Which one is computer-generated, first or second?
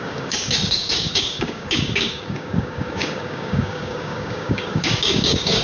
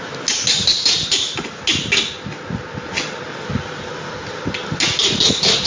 first